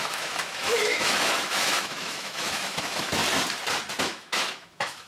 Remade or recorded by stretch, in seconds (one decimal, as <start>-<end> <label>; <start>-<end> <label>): 0.0-3.2 remade; 3.2-4.0 recorded; 4.0-5.1 remade